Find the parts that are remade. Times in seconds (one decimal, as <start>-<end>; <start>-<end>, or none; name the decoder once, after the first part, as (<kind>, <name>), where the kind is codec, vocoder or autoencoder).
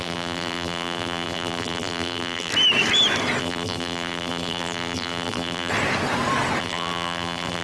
0.0-2.5 (vocoder, BigVGAN v2); 3.4-5.7; 6.6-7.6